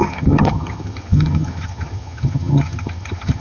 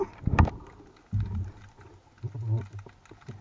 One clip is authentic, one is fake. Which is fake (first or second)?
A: first